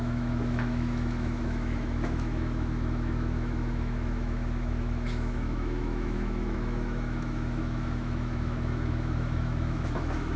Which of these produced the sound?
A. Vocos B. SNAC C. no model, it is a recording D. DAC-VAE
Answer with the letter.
D